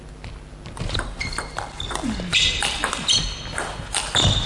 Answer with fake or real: real